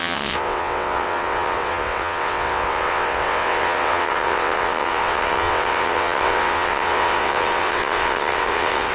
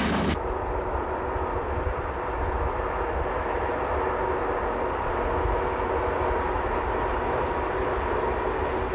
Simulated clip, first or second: first